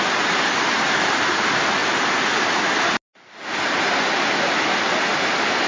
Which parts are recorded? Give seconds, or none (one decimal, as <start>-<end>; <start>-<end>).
0.0-5.7